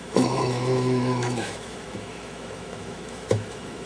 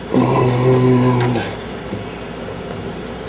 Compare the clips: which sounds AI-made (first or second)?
first